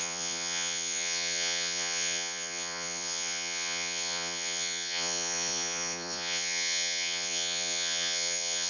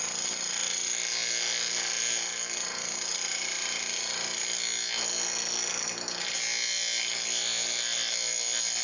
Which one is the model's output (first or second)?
first